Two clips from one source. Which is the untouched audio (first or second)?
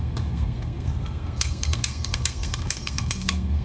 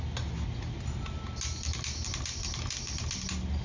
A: second